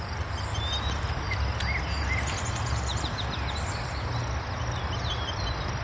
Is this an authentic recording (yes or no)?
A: yes